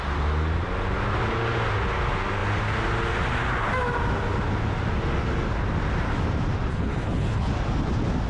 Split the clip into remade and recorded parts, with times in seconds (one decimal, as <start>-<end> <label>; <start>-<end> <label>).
0.0-6.7 recorded; 6.7-7.5 remade; 7.5-8.3 recorded

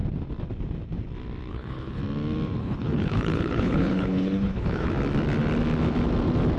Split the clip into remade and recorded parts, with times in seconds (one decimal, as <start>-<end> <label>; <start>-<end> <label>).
0.0-1.5 recorded; 1.5-2.0 remade; 2.0-2.6 recorded; 2.6-4.9 remade; 4.9-6.6 recorded

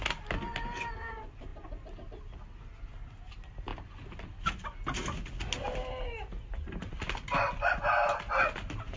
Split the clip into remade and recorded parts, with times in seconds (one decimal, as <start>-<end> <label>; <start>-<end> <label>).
0.0-9.0 recorded

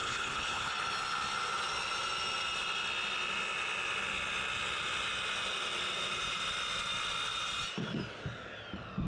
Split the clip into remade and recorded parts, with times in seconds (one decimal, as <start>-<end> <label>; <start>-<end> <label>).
0.0-0.7 remade; 0.7-9.1 recorded

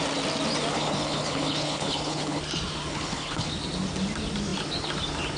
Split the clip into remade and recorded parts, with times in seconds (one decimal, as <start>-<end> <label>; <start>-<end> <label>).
0.0-0.7 recorded; 0.7-2.4 remade; 2.4-2.9 recorded; 2.9-3.5 remade; 3.5-5.4 recorded

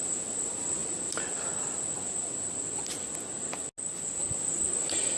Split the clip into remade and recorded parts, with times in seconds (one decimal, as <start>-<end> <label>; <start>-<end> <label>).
0.0-5.2 recorded

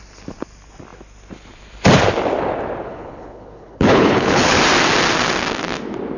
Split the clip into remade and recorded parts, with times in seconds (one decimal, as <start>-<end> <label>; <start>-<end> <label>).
0.0-2.8 recorded; 2.8-4.6 remade; 4.6-6.2 recorded

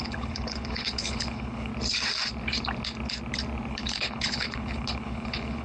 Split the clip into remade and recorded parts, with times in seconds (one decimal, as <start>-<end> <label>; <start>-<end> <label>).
0.0-1.7 remade; 1.7-3.7 recorded; 3.7-5.6 remade